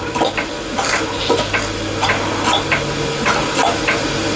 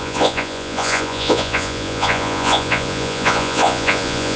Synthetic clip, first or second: second